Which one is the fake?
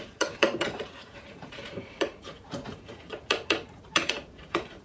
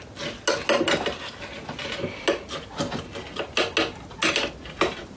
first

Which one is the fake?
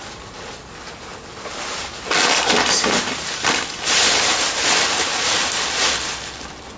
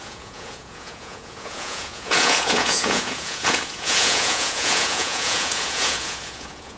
second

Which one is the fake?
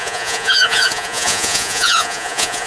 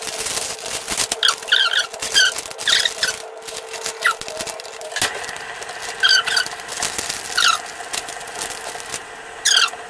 first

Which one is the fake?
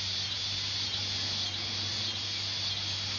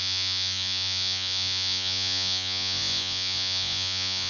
second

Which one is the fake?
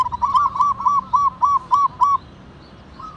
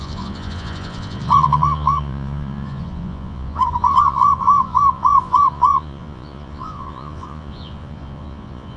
second